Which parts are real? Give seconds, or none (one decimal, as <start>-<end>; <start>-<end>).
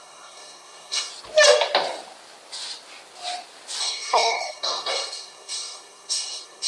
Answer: 1.1-3.8